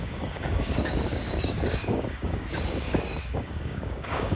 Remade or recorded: remade